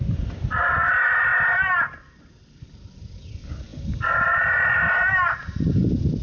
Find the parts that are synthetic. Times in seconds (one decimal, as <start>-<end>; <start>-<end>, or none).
none